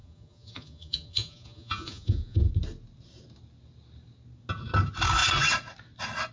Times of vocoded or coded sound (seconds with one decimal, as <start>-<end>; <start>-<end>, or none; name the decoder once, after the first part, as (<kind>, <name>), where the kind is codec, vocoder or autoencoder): 0.0-2.5 (vocoder, Vocos)